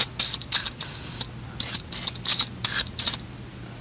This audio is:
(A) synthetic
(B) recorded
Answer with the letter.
B